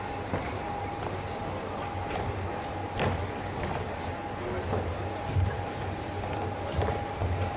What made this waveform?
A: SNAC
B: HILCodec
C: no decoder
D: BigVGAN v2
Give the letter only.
C